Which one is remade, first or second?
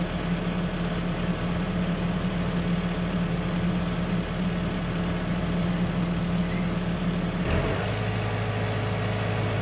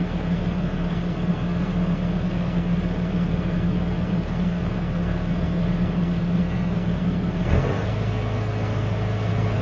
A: second